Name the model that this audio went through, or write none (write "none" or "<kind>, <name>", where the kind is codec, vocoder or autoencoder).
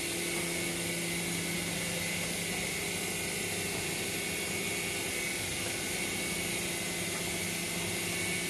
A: none